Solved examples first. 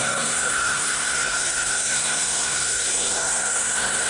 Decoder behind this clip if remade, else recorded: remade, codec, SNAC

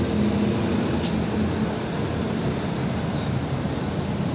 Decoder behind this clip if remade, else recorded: recorded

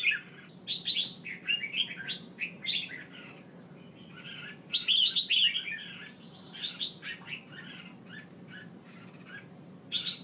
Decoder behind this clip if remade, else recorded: recorded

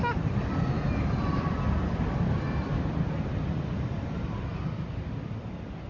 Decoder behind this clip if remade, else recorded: recorded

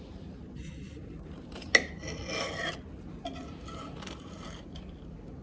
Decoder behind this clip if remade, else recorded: recorded